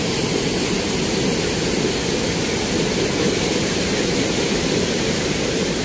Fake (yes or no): no